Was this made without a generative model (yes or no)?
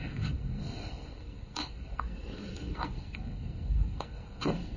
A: no